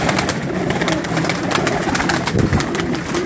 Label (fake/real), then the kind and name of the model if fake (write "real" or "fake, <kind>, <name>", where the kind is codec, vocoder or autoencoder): real